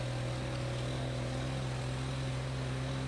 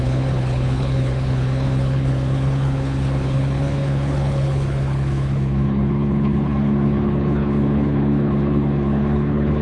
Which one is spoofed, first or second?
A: second